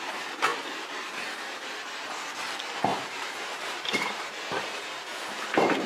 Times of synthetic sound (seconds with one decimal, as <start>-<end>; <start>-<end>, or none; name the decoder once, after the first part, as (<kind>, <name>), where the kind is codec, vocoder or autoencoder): 2.9-5.9 (vocoder, BigVGAN v2)